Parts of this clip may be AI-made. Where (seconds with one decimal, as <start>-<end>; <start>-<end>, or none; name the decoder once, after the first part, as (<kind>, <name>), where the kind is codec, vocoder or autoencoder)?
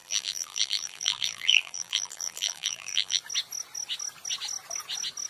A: 0.0-3.2 (vocoder, BigVGAN v2)